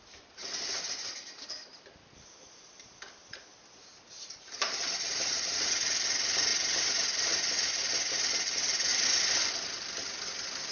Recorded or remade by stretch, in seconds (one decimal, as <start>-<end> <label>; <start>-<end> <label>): 0.0-3.8 recorded; 3.8-5.7 remade; 5.7-8.9 recorded; 8.9-9.5 remade; 9.5-10.7 recorded